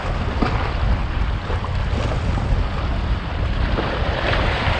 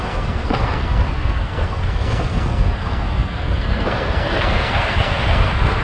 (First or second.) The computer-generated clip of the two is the second